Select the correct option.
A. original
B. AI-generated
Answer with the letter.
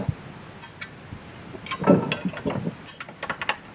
A